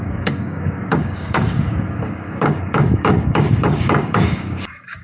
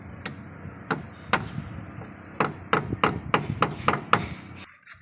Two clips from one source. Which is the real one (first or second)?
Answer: second